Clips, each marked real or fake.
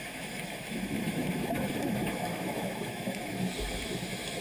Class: fake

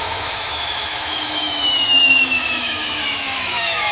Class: fake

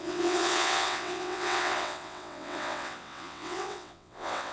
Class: fake